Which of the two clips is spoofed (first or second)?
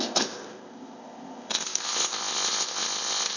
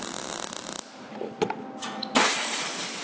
first